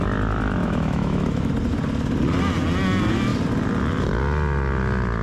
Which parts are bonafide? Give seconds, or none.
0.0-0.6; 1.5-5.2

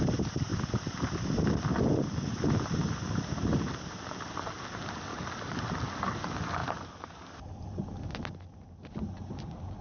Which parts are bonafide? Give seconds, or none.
0.0-5.1; 5.6-9.8